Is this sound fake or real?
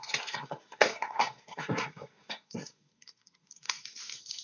fake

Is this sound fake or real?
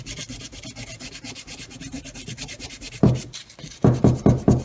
real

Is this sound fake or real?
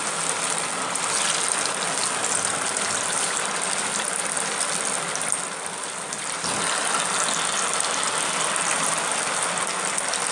real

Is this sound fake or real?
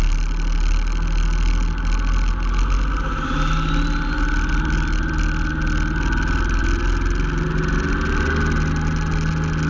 real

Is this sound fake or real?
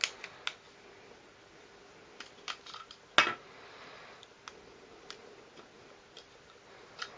real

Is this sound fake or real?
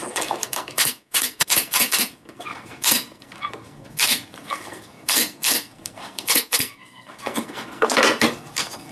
fake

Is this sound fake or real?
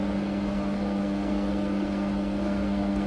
fake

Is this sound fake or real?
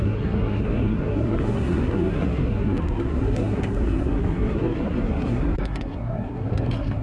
fake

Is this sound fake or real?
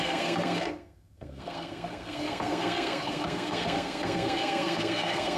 fake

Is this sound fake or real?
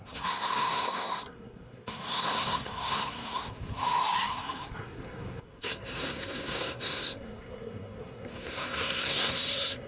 fake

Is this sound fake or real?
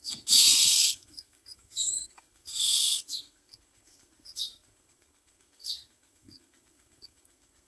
fake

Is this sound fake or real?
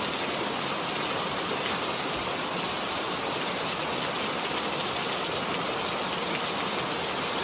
real